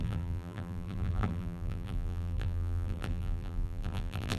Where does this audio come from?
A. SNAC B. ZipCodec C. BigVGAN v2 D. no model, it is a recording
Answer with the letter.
C